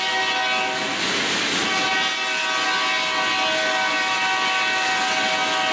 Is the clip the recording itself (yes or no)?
yes